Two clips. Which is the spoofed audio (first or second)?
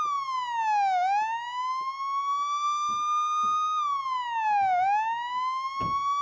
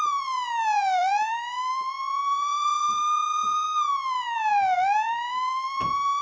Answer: second